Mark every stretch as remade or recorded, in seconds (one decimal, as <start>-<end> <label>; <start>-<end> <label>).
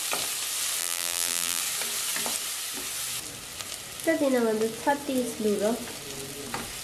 0.0-0.8 recorded; 0.8-1.6 remade; 1.6-6.8 recorded